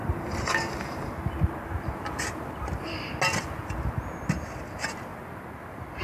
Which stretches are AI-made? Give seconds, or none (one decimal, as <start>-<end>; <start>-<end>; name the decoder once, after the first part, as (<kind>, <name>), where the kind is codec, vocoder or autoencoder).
0.0-1.1 (vocoder, BigVGAN v2)